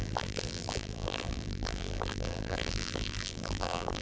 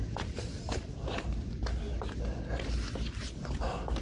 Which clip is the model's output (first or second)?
first